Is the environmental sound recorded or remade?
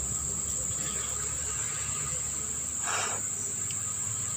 recorded